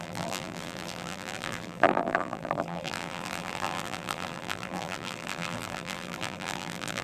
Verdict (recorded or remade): remade